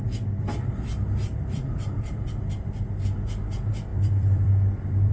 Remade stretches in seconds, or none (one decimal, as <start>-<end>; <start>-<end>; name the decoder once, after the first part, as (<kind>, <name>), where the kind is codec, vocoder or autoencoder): 1.2-2.7 (vocoder, BigVGAN v2); 3.9-5.1